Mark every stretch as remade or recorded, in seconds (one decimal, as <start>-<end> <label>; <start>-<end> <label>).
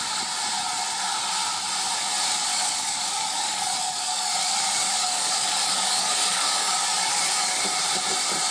0.0-2.5 recorded; 2.5-7.6 remade; 7.6-8.5 recorded